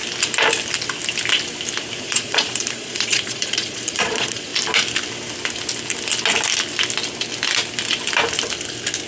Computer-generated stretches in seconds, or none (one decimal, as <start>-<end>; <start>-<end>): 2.0-4.5